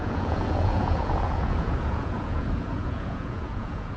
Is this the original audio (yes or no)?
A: no